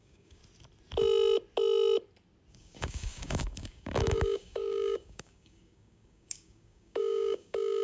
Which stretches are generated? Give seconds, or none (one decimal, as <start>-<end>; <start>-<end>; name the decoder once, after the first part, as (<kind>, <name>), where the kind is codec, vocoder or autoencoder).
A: 0.0-0.4 (codec, DAC); 2.5-7.8